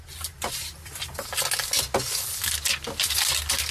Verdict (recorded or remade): recorded